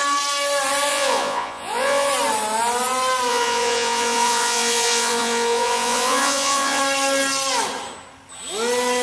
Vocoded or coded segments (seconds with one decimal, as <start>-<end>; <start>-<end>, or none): 0.9-2.1; 3.3-6.8